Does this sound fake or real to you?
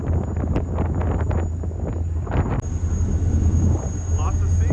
real